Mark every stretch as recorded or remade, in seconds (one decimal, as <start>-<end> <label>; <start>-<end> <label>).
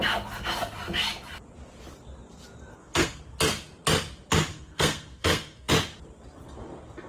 0.0-2.7 recorded; 2.7-3.2 remade; 3.2-4.5 recorded; 4.5-5.7 remade; 5.7-7.1 recorded